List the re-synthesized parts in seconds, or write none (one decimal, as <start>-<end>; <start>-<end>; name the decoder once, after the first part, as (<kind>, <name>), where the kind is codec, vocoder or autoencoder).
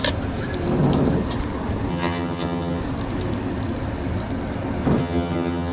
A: 1.9-2.8 (vocoder, HiFi-GAN); 5.0-5.7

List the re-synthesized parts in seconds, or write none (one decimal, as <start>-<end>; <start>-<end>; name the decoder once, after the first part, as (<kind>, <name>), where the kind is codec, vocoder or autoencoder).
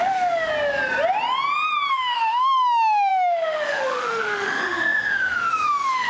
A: 0.0-0.5 (autoencoder, DAC-VAE); 1.9-6.1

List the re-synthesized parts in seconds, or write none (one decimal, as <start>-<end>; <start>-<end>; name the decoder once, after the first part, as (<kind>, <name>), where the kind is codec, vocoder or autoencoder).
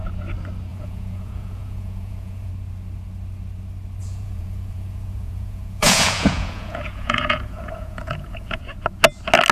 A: 0.7-2.5 (vocoder, Vocos); 4.0-8.6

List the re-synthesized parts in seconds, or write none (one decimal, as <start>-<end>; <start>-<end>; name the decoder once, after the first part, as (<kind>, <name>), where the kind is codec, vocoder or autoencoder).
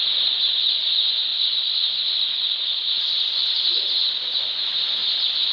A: 1.3-4.5 (vocoder, BigVGAN v2)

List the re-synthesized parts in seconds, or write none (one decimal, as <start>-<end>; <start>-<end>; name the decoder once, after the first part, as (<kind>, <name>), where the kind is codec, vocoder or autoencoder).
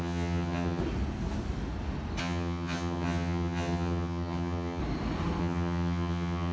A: 0.0-0.8 (vocoder, HiFi-GAN); 2.2-4.8; 5.4-6.5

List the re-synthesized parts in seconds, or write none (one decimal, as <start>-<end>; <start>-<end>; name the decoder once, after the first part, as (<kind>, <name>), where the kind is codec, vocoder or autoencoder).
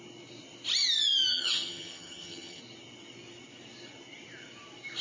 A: 1.3-2.6 (vocoder, HiFi-GAN)